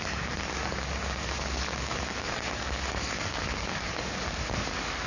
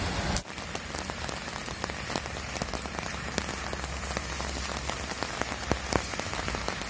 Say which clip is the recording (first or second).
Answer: second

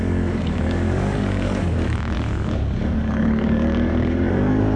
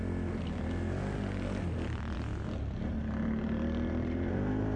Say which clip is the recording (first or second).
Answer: second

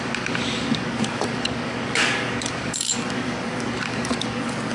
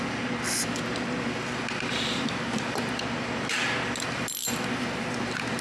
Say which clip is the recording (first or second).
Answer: second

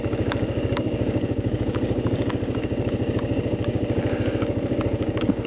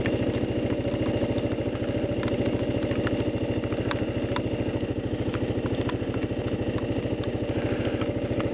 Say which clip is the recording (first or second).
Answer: second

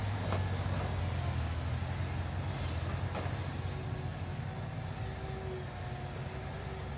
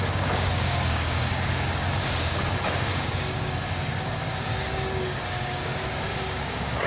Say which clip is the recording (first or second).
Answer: first